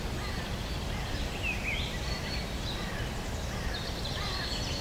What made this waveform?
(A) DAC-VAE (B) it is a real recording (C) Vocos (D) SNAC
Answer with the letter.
B